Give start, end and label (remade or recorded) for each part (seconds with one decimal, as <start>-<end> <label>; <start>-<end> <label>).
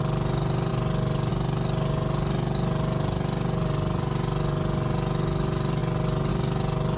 0.0-7.0 recorded